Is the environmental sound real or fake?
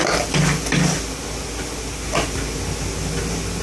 real